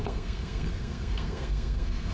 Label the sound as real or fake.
fake